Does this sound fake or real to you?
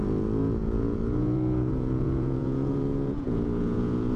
fake